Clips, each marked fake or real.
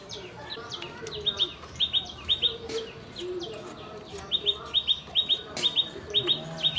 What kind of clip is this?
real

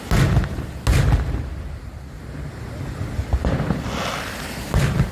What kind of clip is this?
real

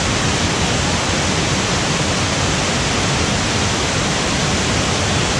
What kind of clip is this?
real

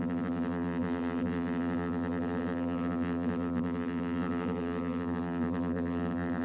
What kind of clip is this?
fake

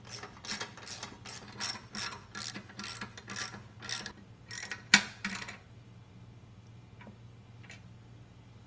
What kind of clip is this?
real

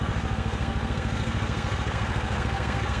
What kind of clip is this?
fake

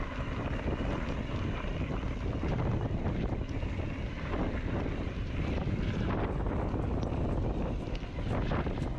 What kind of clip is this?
real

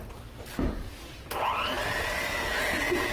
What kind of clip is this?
real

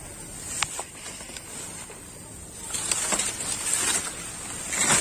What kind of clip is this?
real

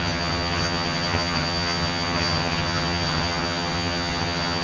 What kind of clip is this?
fake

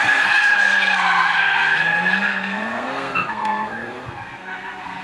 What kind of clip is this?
fake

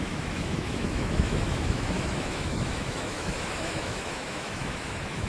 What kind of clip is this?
fake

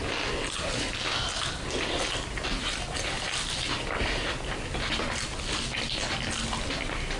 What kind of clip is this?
real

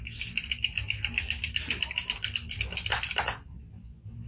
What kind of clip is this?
real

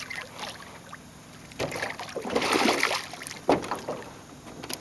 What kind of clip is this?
real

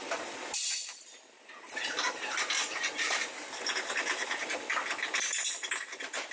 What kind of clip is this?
real